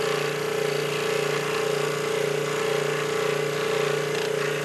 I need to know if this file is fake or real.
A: real